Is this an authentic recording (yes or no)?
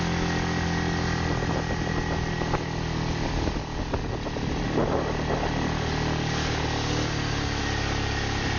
yes